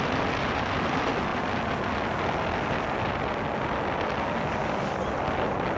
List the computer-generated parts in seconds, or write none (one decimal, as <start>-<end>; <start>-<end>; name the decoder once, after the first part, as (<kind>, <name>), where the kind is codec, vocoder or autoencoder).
none